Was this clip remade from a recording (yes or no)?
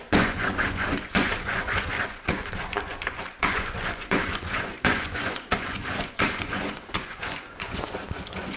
yes